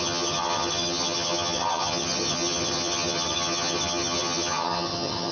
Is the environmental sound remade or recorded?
remade